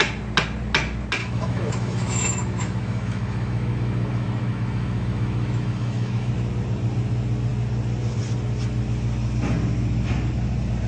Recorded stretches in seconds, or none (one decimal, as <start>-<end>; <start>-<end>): 0.0-1.2; 6.3-10.9

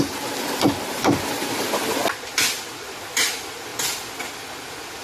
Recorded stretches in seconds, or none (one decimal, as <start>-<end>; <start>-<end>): 0.0-5.0

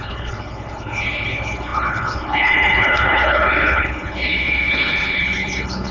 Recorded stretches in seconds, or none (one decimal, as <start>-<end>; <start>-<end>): none